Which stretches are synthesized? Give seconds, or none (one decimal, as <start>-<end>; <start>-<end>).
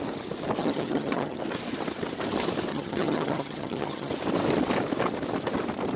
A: 0.6-1.4; 2.7-4.1